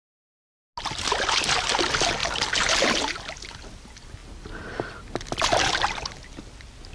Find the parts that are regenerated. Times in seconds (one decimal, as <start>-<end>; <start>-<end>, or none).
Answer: none